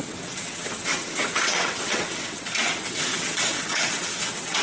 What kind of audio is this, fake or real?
fake